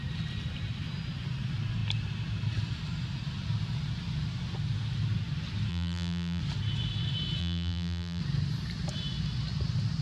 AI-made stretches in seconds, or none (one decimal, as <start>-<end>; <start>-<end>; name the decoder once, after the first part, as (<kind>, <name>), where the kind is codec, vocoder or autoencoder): 5.7-6.4 (vocoder, BigVGAN v2); 7.4-8.2